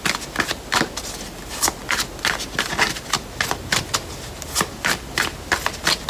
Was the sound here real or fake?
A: real